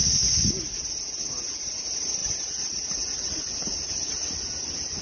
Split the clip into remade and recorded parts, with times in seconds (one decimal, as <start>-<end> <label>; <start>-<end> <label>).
0.0-0.7 remade; 0.7-2.2 recorded; 2.2-4.1 remade; 4.1-5.0 recorded